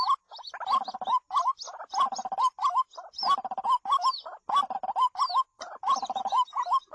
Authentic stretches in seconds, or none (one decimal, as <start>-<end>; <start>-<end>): 0.0-5.5; 6.2-6.9